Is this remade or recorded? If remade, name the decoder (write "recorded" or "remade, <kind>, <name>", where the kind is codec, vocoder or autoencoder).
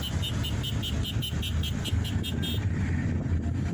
recorded